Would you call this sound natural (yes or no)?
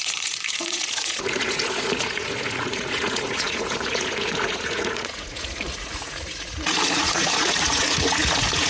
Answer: no